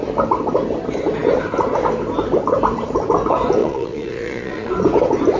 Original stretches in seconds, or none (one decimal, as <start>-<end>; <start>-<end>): 0.0-3.6; 4.7-5.4